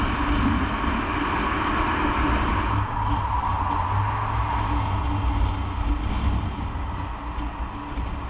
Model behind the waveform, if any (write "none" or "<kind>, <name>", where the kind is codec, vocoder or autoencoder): none